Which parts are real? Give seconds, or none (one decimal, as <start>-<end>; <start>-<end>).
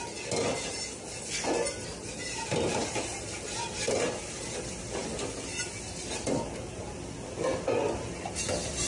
0.0-8.9